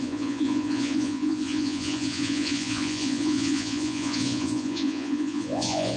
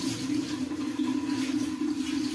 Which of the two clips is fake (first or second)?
first